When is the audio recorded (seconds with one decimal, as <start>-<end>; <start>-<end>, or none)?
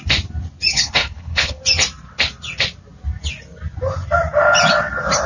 0.0-0.7; 1.6-5.3